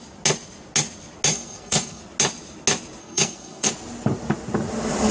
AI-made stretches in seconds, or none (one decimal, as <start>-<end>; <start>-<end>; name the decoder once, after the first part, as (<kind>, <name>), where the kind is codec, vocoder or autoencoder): 1.3-2.0 (codec, SNAC); 3.0-3.7